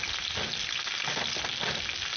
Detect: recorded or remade recorded